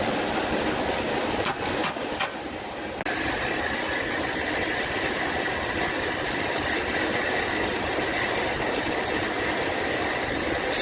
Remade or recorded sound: recorded